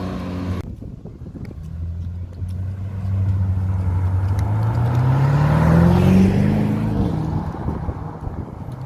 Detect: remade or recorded recorded